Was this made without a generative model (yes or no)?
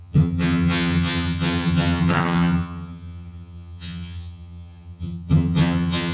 no